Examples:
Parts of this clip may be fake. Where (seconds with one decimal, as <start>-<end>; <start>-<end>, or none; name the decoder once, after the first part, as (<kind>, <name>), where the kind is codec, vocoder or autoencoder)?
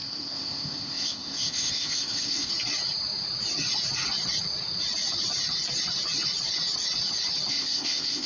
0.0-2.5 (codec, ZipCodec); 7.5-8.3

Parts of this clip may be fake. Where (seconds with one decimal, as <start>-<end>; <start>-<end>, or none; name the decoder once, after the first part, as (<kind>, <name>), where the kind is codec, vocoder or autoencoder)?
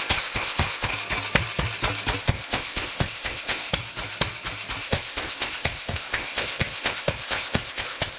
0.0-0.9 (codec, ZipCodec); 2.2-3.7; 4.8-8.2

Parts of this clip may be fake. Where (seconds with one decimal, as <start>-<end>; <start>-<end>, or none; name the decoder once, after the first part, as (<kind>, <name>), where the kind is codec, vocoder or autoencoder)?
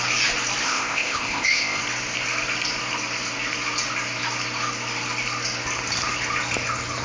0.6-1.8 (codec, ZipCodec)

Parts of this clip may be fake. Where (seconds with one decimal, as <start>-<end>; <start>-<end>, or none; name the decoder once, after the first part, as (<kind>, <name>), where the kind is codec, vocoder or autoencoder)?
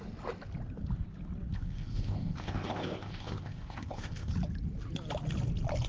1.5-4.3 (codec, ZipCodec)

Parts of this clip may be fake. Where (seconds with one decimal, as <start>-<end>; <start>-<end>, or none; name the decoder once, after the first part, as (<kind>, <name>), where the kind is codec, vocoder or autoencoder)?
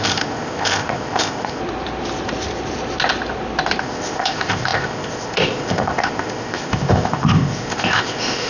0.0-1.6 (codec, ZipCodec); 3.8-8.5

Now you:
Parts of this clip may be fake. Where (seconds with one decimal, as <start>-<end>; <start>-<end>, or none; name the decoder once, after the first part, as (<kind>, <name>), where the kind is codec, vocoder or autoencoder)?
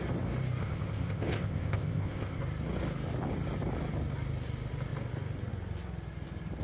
0.6-2.4 (codec, ZipCodec)